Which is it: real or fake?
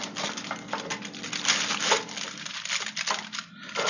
real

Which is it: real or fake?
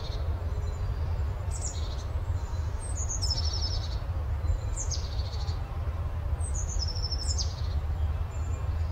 real